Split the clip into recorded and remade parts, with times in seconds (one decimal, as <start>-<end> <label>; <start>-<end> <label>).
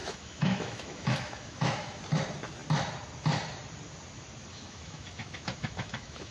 0.0-2.0 remade; 2.0-4.5 recorded; 4.5-6.3 remade